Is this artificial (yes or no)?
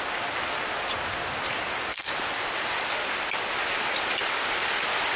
yes